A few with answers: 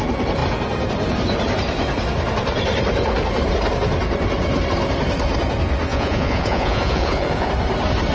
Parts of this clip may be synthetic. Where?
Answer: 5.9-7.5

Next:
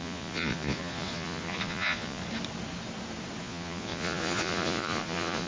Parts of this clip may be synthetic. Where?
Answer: 0.0-2.2; 3.4-5.5

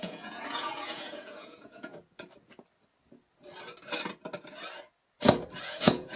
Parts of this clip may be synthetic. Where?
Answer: 0.0-1.9; 5.6-6.2

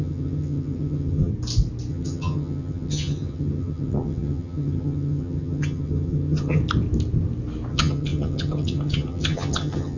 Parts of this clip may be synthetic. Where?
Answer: 0.0-1.3; 1.9-6.6; 7.7-10.0